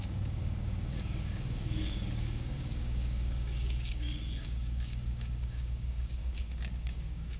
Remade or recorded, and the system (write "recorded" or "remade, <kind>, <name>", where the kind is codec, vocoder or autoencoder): remade, codec, DAC